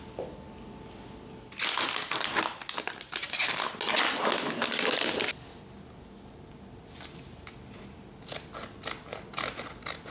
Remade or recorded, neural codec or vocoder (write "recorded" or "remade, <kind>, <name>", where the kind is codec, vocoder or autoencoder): recorded